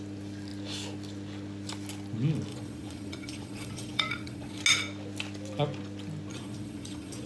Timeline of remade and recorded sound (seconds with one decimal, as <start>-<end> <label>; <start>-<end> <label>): 0.0-2.5 recorded; 2.5-4.6 remade; 4.6-6.3 recorded; 6.3-7.3 remade